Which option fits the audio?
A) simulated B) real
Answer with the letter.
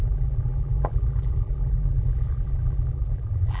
A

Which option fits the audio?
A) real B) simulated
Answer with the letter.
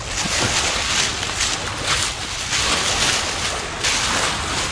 A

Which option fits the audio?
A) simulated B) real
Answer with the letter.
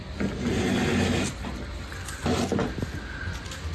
B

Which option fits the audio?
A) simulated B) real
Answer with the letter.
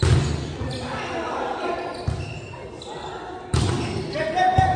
B